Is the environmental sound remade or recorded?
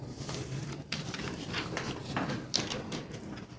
recorded